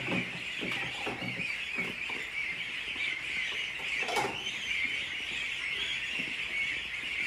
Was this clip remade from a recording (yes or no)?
no